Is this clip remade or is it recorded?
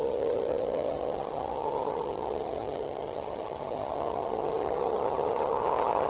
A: remade